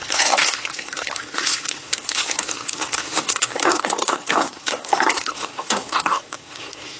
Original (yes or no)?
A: no